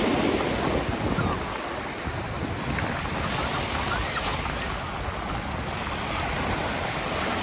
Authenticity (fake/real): real